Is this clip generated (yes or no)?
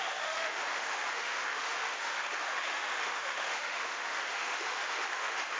yes